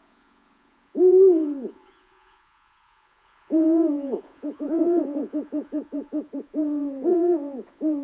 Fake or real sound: fake